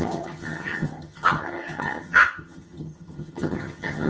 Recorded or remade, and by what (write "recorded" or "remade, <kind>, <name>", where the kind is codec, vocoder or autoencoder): remade, vocoder, HiFi-GAN